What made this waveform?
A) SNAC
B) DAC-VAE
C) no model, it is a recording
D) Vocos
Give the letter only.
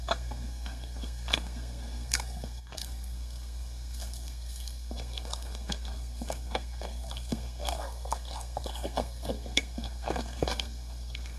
A